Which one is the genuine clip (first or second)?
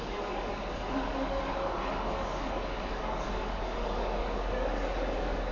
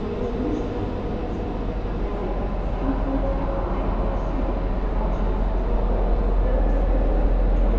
second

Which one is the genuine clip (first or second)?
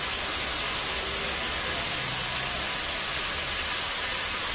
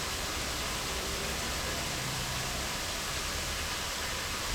first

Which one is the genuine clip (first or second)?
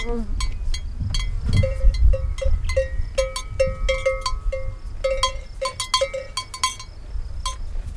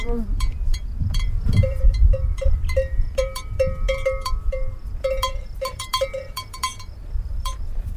first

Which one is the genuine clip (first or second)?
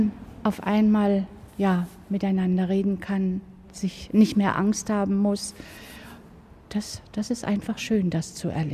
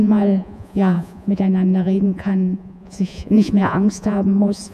first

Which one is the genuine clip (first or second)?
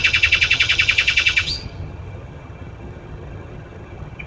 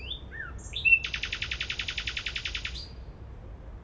second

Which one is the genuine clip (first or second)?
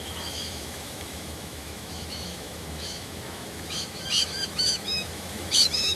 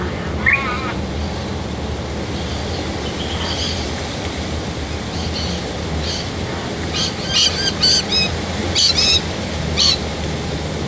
second